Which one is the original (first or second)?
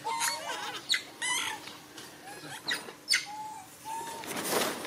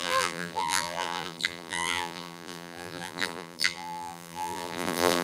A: first